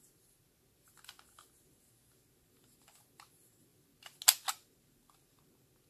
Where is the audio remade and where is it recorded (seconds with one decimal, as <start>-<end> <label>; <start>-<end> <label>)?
0.0-5.9 recorded